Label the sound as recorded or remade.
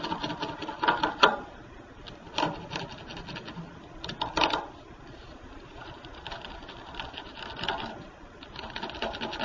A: recorded